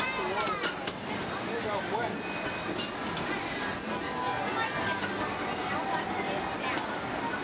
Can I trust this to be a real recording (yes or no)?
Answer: yes